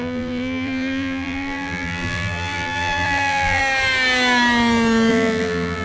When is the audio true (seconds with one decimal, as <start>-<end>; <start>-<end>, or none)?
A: 3.6-5.1